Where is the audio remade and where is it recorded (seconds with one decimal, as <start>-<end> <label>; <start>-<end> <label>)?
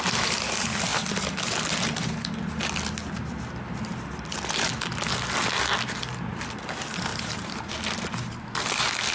0.0-7.1 recorded; 7.1-7.7 remade; 7.7-9.1 recorded